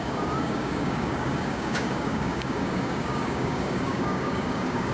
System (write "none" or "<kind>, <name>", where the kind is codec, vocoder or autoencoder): codec, DAC